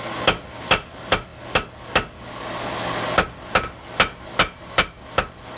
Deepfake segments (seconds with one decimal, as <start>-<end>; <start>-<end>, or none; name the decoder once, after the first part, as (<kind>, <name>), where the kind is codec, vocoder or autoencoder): none